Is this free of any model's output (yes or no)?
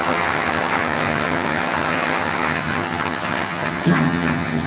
no